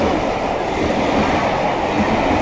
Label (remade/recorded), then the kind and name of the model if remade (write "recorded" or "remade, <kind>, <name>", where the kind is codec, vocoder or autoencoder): recorded